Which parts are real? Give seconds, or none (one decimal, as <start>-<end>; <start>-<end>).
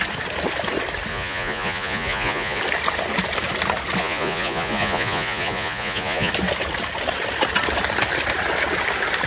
0.0-1.1; 2.6-4.0; 6.3-9.3